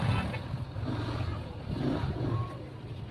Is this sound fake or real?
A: real